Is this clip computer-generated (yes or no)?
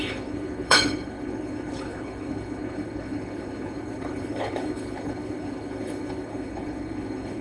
yes